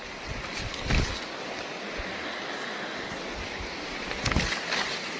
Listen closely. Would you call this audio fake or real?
real